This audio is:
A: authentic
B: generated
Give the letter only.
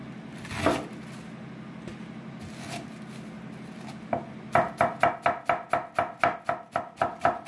A